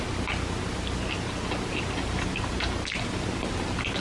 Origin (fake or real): real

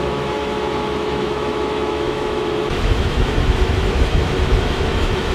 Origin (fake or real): fake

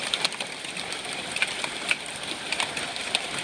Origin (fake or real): fake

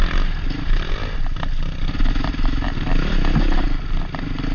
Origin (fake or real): real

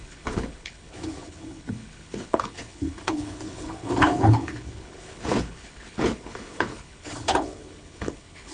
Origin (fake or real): fake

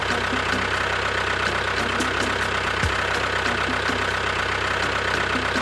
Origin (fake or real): real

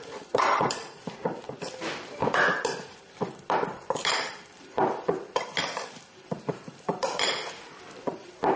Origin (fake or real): fake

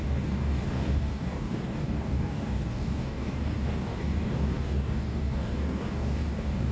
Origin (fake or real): fake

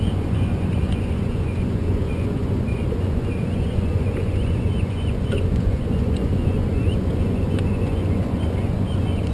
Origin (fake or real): fake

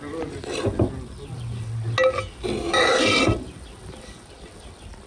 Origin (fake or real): real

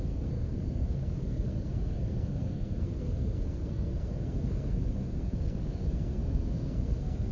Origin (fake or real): fake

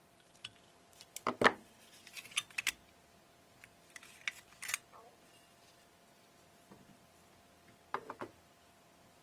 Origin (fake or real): real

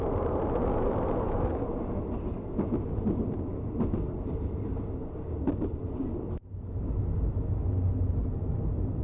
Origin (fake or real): real